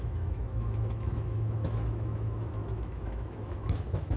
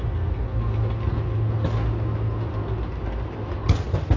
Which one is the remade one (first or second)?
first